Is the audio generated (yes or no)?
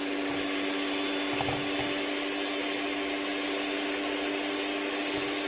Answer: no